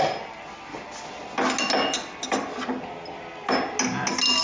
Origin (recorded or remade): recorded